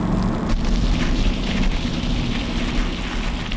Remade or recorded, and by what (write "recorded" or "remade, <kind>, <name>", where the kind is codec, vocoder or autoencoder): recorded